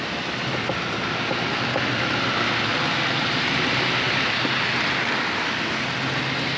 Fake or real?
real